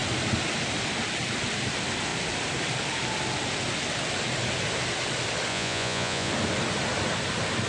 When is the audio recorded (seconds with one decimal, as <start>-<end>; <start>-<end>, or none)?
0.0-5.5; 6.3-7.7